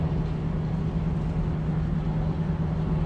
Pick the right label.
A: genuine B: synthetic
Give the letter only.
A